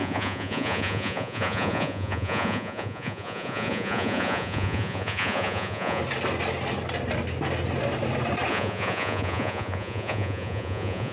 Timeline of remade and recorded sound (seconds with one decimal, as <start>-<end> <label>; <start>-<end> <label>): 0.0-6.0 remade; 6.0-8.5 recorded; 8.5-11.1 remade